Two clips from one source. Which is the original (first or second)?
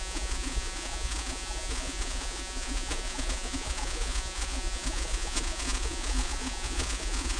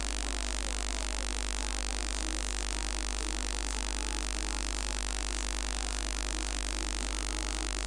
second